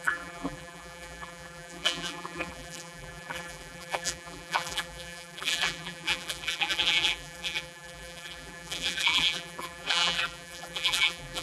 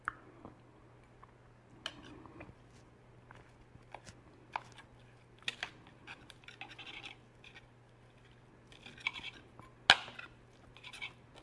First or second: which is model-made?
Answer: first